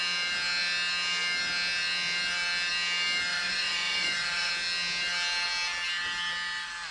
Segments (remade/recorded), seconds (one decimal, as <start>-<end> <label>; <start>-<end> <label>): 0.0-3.3 recorded; 3.3-4.5 remade; 4.5-6.9 recorded

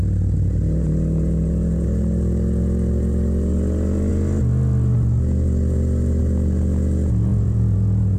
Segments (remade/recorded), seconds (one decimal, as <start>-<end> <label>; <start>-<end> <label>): 0.0-7.3 recorded; 7.3-8.2 remade

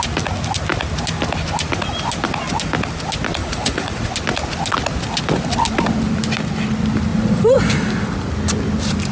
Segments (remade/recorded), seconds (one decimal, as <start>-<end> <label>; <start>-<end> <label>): 0.0-3.4 recorded; 3.4-4.1 remade; 4.1-7.1 recorded; 7.1-7.6 remade; 7.6-9.1 recorded

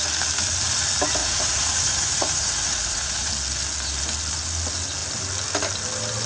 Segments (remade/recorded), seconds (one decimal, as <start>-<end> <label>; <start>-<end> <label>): 0.0-1.2 recorded; 1.2-3.3 remade; 3.3-6.3 recorded